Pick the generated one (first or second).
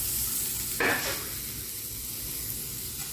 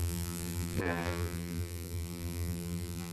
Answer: second